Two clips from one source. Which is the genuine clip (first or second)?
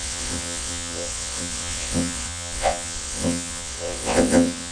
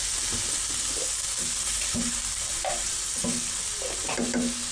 second